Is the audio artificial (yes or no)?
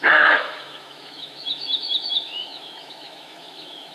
yes